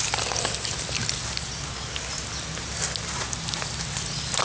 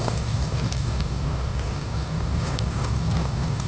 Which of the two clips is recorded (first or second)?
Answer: first